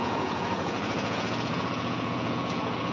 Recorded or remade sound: remade